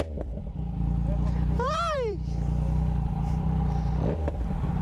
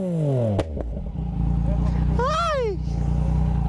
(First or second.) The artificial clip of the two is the first